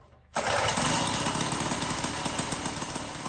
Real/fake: real